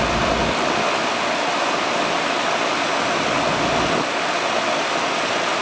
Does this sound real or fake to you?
real